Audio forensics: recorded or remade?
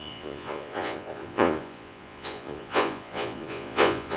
remade